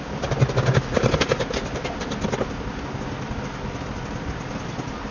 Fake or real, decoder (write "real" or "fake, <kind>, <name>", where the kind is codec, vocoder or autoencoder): real